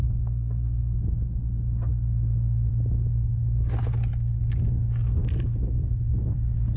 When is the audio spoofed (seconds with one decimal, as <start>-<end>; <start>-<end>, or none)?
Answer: 0.0-0.8